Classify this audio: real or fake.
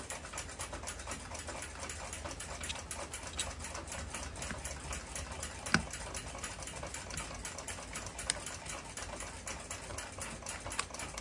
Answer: real